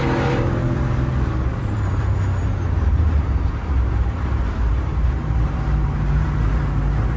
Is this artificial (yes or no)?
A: yes